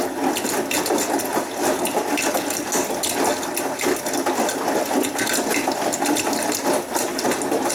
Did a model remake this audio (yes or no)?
no